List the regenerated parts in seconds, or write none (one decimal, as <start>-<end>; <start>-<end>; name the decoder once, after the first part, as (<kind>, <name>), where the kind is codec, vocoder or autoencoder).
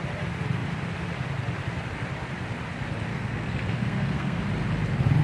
3.1-4.4 (codec, SNAC)